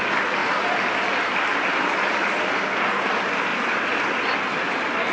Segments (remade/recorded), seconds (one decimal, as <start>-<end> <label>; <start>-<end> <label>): 0.0-5.1 recorded